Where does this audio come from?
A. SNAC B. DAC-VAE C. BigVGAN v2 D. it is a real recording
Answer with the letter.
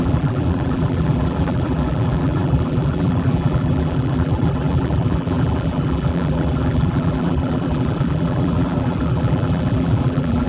C